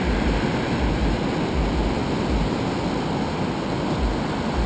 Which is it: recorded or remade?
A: recorded